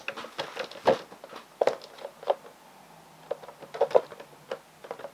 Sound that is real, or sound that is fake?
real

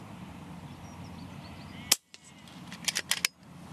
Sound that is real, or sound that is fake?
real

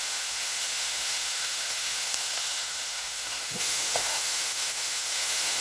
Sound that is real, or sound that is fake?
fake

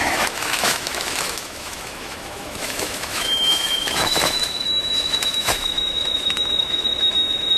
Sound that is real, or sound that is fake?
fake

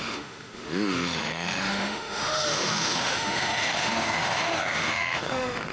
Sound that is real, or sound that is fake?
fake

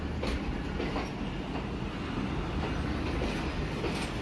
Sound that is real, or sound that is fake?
real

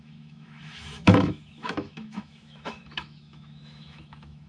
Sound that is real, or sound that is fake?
fake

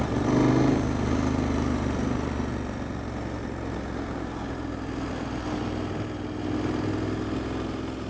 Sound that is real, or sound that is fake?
real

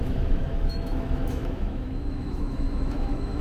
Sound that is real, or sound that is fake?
fake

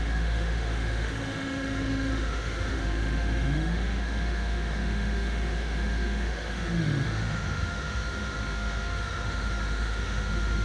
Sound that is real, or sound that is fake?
fake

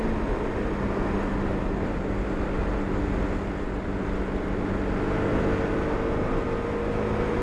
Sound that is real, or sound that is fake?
real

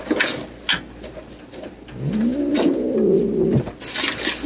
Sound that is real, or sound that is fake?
real